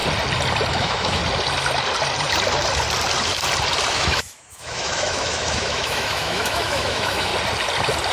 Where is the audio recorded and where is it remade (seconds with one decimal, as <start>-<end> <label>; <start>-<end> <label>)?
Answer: 0.0-0.7 recorded; 0.7-1.2 remade; 1.2-3.9 recorded; 3.9-7.3 remade; 7.3-8.1 recorded